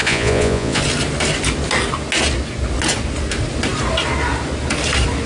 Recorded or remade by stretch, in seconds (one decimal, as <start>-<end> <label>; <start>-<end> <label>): 0.0-0.8 remade; 0.8-5.3 recorded